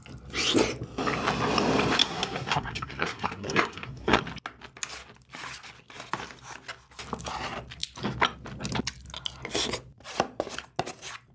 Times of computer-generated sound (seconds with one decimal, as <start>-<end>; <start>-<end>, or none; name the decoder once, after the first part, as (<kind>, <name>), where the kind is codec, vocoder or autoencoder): 2.0-4.2 (codec, SNAC)